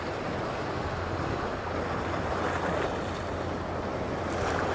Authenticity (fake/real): real